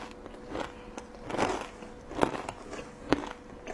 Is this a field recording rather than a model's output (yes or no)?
yes